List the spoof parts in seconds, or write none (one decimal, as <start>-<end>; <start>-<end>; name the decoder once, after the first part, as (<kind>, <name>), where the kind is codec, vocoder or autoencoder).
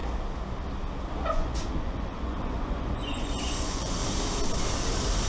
1.1-4.0 (vocoder, Vocos)